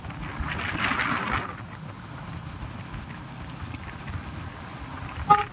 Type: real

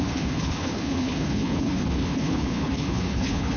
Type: fake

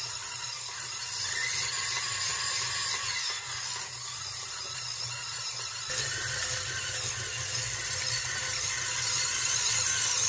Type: real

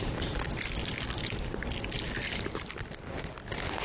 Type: real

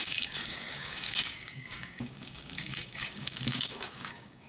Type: fake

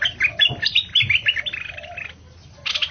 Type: real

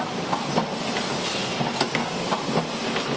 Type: real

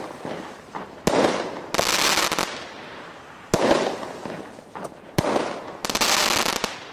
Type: real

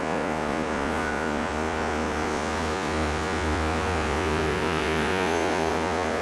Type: fake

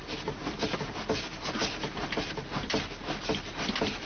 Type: real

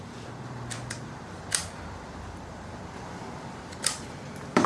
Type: fake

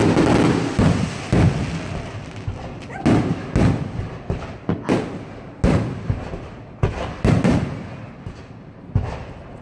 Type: real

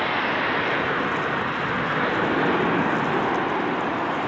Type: real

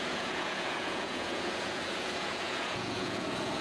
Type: fake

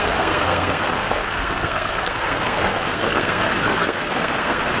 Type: fake